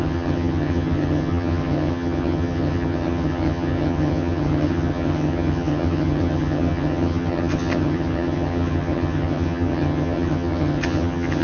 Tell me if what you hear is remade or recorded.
remade